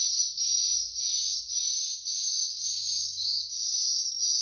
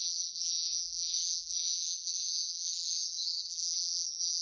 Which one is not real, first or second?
second